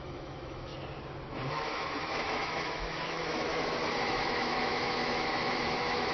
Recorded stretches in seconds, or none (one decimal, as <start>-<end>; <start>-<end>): 0.7-1.5; 3.5-4.1